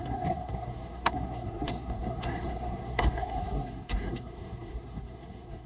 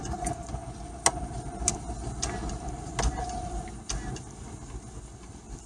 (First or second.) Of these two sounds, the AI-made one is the first